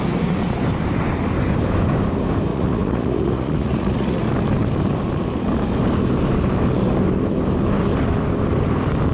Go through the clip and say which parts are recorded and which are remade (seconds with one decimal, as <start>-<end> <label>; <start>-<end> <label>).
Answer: 0.0-2.5 recorded; 2.5-4.2 remade; 4.2-9.1 recorded